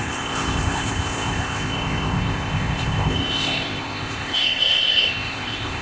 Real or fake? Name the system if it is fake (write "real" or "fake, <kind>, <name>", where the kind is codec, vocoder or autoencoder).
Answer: fake, codec, ZipCodec